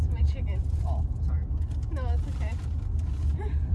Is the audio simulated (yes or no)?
no